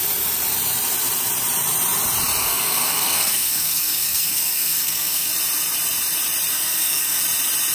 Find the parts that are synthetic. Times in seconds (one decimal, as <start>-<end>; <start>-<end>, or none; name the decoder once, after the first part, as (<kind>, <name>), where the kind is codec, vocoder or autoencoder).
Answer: 2.4-5.3 (codec, SNAC); 6.5-7.2